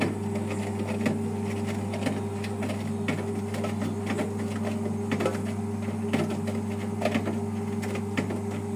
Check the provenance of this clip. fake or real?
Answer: real